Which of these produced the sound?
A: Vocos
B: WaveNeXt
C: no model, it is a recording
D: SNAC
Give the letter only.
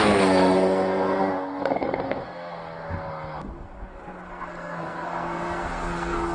D